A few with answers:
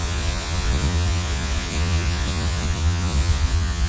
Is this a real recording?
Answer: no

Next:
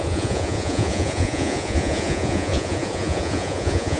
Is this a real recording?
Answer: no